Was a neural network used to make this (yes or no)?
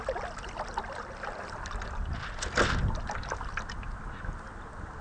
no